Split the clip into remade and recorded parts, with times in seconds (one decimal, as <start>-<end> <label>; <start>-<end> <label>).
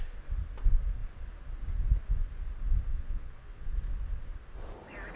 0.0-2.9 recorded; 2.9-3.8 remade; 3.8-5.2 recorded